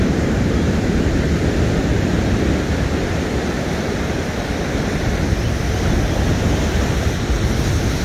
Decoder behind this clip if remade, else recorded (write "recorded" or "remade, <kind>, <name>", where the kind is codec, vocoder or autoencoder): recorded